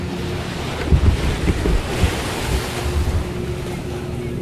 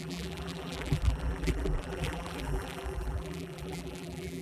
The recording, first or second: first